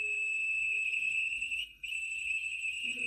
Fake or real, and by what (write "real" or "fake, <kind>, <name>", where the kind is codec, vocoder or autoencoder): fake, codec, SNAC